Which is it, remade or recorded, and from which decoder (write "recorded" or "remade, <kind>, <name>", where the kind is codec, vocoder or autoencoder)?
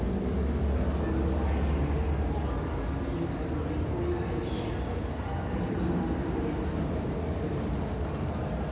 recorded